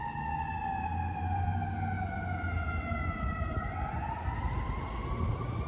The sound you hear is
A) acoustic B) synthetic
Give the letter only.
A